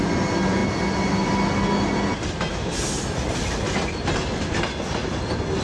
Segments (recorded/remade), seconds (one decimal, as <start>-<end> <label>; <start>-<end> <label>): 0.0-5.6 recorded